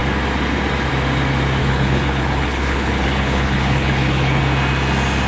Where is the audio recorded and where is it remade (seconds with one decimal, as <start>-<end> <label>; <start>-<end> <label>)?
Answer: 0.0-1.6 recorded; 1.6-4.4 remade; 4.4-5.3 recorded